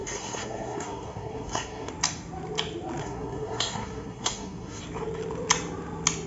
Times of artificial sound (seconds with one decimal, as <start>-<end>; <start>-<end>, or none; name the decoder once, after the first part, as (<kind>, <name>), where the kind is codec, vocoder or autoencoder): 0.0-1.9 (codec, SNAC); 3.0-4.8